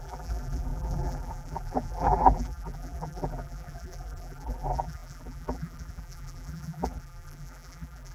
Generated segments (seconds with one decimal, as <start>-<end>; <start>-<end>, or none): 0.0-8.1